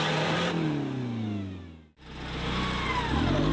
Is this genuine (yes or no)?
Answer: yes